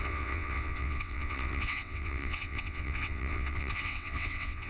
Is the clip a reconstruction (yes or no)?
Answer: yes